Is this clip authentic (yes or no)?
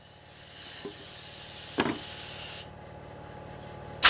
yes